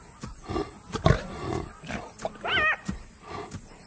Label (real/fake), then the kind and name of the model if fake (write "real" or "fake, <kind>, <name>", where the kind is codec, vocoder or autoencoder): real